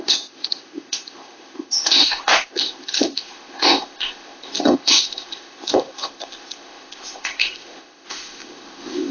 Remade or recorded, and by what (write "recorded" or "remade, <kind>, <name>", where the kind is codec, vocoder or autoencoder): remade, codec, ZipCodec